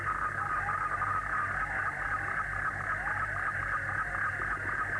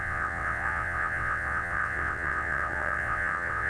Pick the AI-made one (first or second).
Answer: second